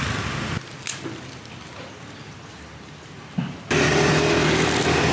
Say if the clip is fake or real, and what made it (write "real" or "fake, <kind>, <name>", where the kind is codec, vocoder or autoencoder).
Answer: real